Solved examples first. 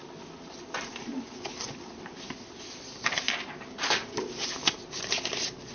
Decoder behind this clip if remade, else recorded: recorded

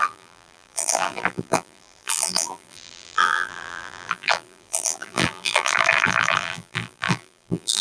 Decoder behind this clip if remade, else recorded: remade, vocoder, BigVGAN v2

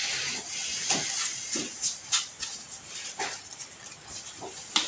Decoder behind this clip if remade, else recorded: recorded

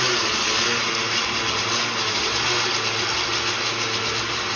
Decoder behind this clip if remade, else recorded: recorded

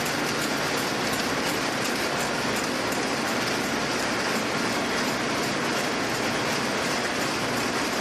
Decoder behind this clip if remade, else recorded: recorded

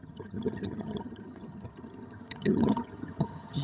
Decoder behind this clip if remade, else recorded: remade, vocoder, HiFi-GAN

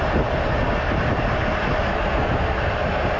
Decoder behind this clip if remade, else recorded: recorded